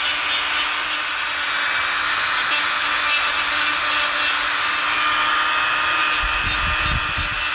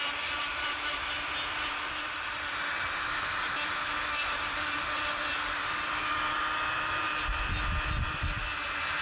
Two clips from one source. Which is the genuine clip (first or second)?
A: first